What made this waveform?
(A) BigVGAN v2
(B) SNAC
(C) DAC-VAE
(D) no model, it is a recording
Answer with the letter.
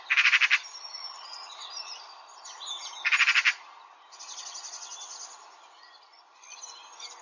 D